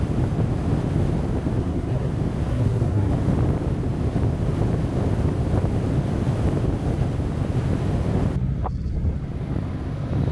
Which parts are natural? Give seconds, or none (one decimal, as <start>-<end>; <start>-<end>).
0.0-1.6; 2.1-2.5; 3.1-10.3